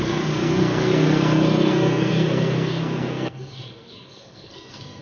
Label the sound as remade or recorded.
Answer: remade